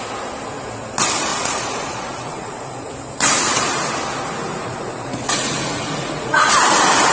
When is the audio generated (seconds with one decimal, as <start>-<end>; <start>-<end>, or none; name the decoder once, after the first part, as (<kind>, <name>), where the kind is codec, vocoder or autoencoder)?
1.3-2.9 (vocoder, Vocos); 4.5-6.5